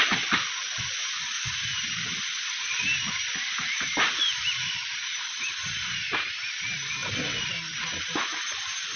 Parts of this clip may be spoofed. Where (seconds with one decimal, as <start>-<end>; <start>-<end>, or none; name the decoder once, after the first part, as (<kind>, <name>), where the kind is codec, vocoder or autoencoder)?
none